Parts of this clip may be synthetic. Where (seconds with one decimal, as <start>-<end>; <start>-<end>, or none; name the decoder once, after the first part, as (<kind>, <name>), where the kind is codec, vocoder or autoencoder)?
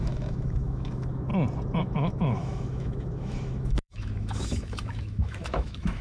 0.0-1.3 (autoencoder, DAC-VAE); 1.8-6.0